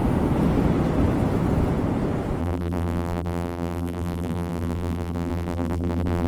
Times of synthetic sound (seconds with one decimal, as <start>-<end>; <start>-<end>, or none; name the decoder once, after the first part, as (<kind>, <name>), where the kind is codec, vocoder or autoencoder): 2.4-6.3 (vocoder, BigVGAN v2)